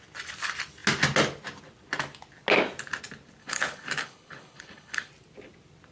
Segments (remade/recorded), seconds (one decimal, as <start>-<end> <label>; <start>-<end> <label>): 0.0-3.4 recorded; 3.4-5.1 remade; 5.1-5.9 recorded